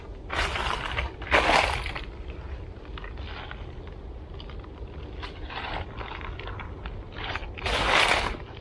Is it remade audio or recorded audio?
recorded